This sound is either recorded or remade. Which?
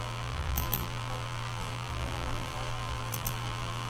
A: remade